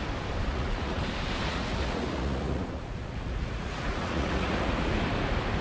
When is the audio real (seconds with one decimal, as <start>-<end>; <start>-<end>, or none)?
0.0-0.5; 1.0-1.5; 4.9-5.6